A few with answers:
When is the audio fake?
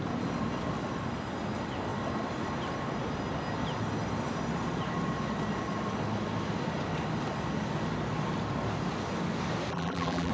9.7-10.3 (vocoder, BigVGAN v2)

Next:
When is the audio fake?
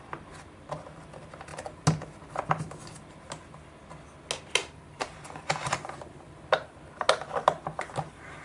4.6-6.8 (vocoder, BigVGAN v2)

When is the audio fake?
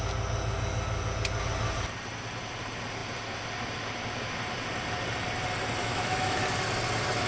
5.8-6.4 (autoencoder, DAC-VAE)